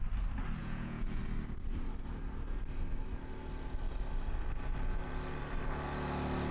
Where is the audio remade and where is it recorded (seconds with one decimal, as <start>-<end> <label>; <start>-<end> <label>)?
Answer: 0.0-0.6 recorded; 0.6-1.2 remade; 1.2-6.5 recorded